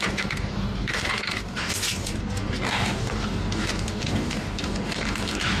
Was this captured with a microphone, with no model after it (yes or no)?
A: no